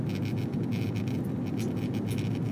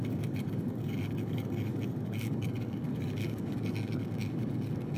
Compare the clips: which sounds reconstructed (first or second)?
second